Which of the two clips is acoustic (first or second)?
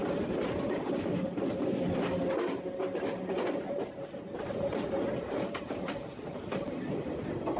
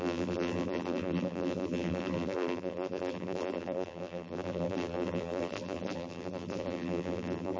first